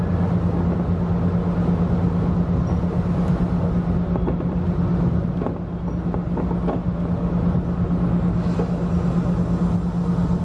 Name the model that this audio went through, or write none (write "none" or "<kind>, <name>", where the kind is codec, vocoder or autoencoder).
none